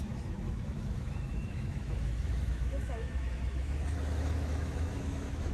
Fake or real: fake